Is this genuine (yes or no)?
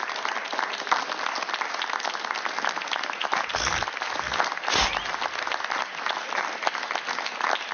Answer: yes